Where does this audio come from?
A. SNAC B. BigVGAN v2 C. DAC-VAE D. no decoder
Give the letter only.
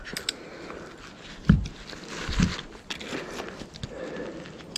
D